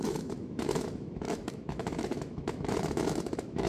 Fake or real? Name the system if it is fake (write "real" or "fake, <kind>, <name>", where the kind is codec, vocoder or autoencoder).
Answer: fake, autoencoder, DAC-VAE